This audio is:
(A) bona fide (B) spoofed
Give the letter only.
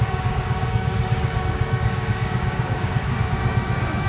B